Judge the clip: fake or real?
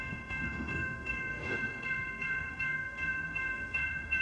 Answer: fake